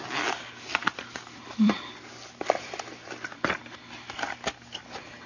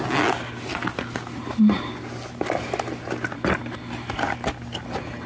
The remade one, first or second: first